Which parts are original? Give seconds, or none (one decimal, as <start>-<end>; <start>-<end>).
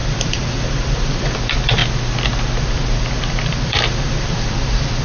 1.8-2.6